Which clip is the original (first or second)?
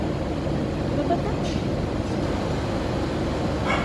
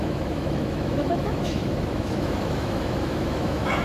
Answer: first